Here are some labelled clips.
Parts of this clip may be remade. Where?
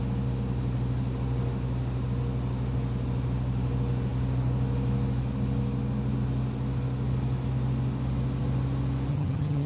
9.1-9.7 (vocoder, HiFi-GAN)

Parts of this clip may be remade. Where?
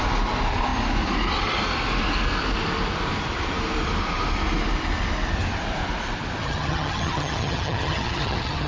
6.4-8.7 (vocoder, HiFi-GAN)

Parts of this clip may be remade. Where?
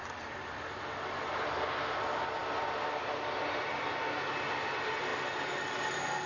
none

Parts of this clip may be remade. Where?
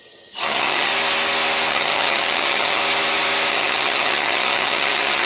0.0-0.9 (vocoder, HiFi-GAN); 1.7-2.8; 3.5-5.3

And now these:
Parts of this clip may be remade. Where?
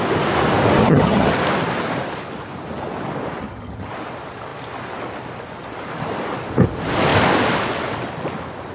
0.8-1.3 (vocoder, HiFi-GAN); 3.4-3.9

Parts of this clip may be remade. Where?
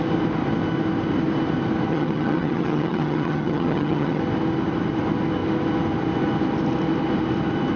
1.9-4.2 (vocoder, HiFi-GAN)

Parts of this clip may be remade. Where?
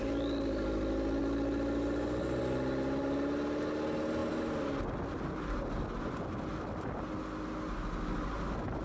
none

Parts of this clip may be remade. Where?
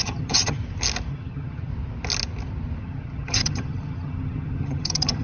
0.0-0.6 (vocoder, HiFi-GAN); 1.1-1.7; 2.8-5.2